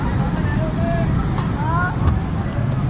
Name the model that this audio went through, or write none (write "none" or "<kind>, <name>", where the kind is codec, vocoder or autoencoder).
none